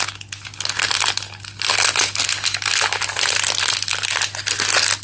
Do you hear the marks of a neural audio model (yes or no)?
no